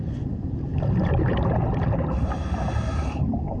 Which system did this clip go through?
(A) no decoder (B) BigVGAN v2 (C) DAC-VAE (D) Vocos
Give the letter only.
A